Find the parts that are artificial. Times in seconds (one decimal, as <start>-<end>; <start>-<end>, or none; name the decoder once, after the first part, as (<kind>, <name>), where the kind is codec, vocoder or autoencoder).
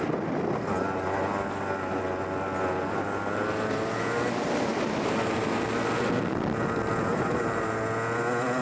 7.1-7.8 (vocoder, BigVGAN v2)